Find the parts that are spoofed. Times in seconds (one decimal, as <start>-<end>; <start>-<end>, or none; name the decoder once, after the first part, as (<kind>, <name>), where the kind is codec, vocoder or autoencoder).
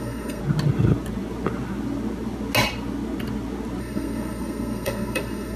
0.0-0.4 (codec, SNAC); 3.8-5.6